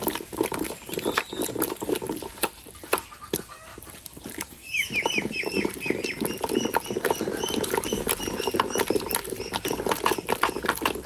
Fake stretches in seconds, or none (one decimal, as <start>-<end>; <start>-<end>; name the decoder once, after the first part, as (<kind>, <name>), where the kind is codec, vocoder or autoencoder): none